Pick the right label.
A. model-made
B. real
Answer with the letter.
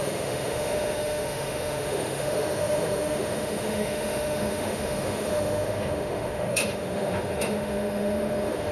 A